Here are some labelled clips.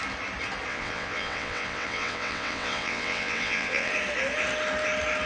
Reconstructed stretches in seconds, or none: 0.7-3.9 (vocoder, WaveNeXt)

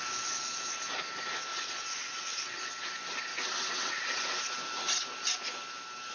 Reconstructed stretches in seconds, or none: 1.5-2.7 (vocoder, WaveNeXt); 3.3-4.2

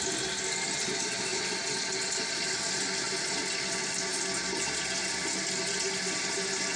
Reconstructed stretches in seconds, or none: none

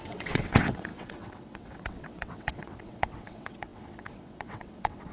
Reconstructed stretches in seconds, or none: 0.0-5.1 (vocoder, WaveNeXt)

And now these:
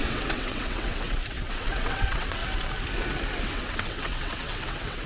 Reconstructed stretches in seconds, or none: 0.0-2.4 (vocoder, WaveNeXt); 3.4-5.1